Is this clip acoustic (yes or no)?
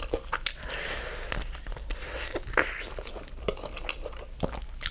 yes